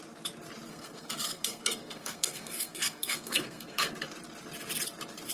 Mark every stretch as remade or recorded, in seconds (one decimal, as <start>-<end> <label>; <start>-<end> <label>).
0.0-0.7 recorded; 0.7-3.9 remade; 3.9-5.3 recorded